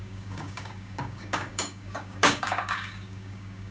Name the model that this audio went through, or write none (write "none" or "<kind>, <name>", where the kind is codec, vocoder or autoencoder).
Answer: codec, DAC